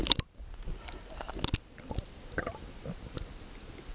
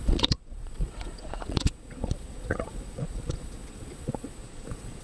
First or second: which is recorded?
first